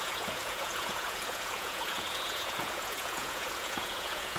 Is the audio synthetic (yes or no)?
yes